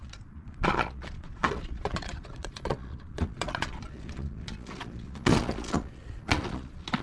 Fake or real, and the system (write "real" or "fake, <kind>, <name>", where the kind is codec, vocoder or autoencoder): fake, vocoder, Vocos